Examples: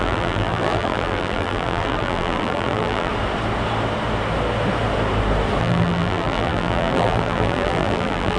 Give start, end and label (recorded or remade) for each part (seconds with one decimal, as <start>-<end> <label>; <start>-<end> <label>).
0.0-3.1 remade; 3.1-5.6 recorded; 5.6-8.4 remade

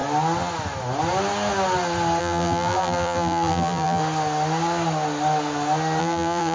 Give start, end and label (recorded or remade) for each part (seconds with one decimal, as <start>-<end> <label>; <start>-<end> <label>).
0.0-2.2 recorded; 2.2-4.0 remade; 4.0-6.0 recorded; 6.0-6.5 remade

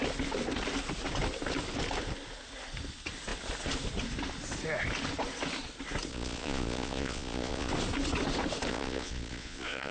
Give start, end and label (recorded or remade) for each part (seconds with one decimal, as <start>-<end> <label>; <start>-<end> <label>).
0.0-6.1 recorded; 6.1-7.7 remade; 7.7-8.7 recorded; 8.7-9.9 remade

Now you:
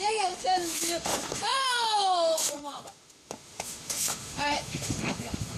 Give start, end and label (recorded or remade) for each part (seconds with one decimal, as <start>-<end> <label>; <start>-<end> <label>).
0.0-5.6 remade

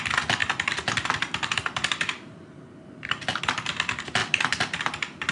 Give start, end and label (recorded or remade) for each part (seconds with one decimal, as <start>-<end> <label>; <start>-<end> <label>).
0.0-0.4 recorded; 0.4-3.4 remade; 3.4-4.2 recorded; 4.2-5.3 remade